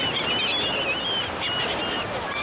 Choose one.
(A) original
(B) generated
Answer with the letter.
A